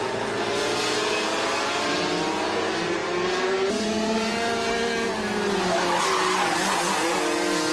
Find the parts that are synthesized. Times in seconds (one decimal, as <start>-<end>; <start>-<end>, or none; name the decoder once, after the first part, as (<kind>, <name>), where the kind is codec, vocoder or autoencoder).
none